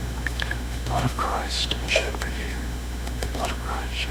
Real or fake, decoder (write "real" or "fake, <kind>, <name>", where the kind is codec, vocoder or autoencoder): fake, autoencoder, DAC-VAE